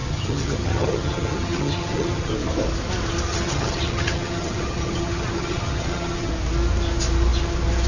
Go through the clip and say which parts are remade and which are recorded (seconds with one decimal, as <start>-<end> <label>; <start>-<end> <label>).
0.0-2.3 remade; 2.3-3.3 recorded; 3.3-6.3 remade; 6.3-7.9 recorded